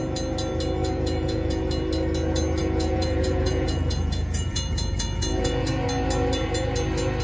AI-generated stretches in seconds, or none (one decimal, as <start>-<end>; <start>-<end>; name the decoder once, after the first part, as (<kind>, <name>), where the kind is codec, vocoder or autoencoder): 0.8-1.6 (vocoder, Vocos); 2.6-5.7

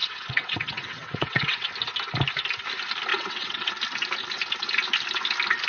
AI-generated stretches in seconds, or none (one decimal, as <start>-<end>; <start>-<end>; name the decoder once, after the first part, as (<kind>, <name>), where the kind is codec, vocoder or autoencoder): 0.0-1.7 (vocoder, WaveNeXt); 3.1-3.7

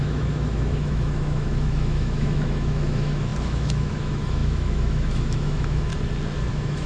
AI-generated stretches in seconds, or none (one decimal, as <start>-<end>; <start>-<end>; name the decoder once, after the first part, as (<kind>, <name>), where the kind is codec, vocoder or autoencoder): 0.0-5.9 (autoencoder, DAC-VAE); 6.5-6.9